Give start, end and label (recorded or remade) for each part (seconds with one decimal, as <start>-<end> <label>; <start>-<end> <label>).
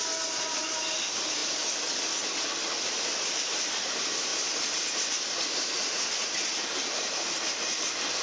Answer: 0.0-8.2 recorded